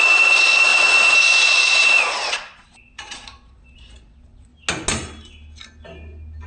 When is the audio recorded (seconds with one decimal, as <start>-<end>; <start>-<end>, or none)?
4.5-6.5